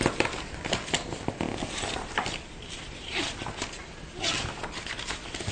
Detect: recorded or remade recorded